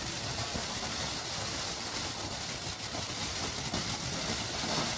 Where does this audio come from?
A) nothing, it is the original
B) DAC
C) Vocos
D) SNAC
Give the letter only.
A